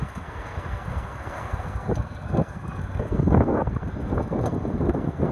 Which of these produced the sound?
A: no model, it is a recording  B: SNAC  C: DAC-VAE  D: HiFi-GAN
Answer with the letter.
B